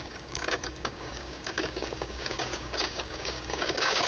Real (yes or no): no